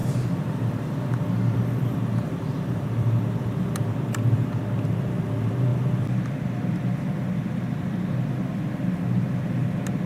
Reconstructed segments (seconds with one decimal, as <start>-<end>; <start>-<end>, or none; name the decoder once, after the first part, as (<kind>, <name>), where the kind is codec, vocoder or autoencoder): 0.0-4.6 (vocoder, BigVGAN v2)